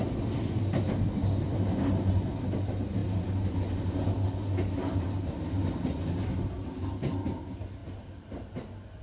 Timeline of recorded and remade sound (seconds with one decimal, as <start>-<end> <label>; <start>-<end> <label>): 0.0-9.0 recorded